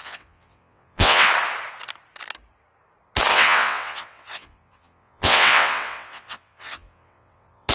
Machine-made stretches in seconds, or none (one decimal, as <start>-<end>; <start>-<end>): 0.0-1.3; 3.3-7.7